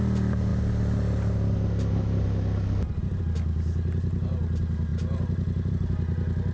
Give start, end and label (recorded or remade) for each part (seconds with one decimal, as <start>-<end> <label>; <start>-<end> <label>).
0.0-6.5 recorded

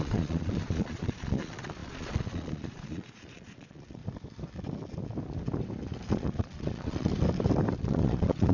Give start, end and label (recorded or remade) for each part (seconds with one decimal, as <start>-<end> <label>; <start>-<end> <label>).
0.0-4.0 remade; 4.0-6.1 recorded; 6.1-7.1 remade; 7.1-7.8 recorded; 7.8-8.5 remade

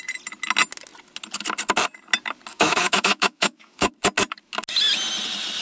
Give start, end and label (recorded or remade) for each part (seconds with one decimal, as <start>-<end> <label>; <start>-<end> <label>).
0.0-2.5 recorded; 2.5-3.9 remade; 3.9-5.6 recorded

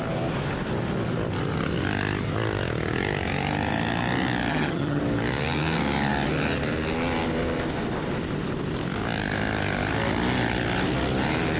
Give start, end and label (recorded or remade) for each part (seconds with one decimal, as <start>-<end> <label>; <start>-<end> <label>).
0.0-4.5 recorded; 4.5-5.0 remade; 5.0-11.6 recorded

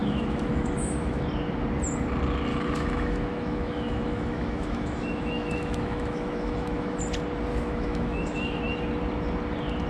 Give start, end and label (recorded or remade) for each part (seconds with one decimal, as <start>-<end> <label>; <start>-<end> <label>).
0.0-1.2 remade; 1.2-2.5 recorded; 2.5-7.0 remade; 7.0-7.5 recorded; 7.5-8.6 remade; 8.6-9.9 recorded

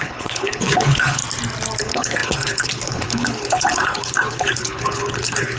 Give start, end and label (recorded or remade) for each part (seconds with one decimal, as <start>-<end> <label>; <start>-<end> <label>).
0.0-1.2 remade; 1.2-1.8 recorded; 1.8-5.6 remade

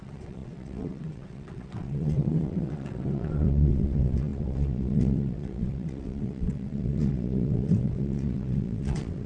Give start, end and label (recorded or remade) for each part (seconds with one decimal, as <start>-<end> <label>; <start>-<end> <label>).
0.0-9.3 remade

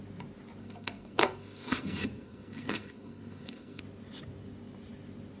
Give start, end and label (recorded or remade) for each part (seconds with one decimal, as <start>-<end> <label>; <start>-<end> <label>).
0.0-0.6 recorded; 0.6-3.8 remade; 3.8-5.4 recorded